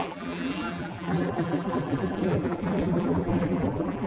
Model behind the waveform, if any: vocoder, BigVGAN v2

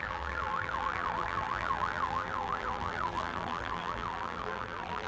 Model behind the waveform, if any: vocoder, BigVGAN v2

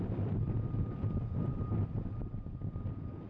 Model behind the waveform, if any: vocoder, BigVGAN v2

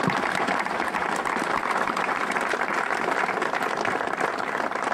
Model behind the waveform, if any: vocoder, BigVGAN v2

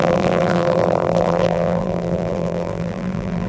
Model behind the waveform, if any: vocoder, BigVGAN v2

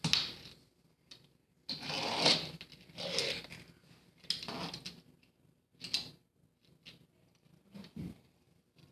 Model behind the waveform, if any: none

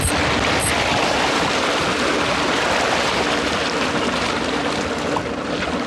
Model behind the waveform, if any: none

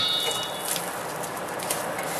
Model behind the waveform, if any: none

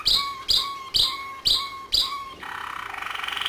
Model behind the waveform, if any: none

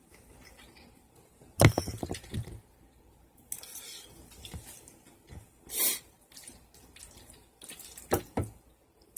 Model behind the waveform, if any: vocoder, BigVGAN v2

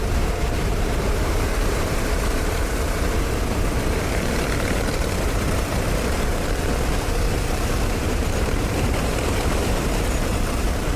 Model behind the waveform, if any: vocoder, BigVGAN v2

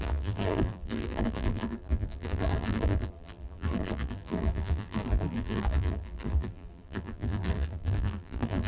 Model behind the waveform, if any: vocoder, BigVGAN v2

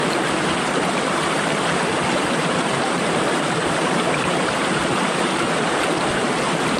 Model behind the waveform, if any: vocoder, BigVGAN v2